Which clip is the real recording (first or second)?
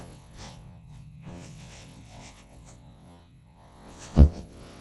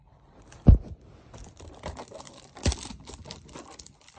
second